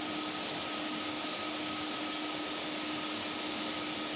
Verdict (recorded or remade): recorded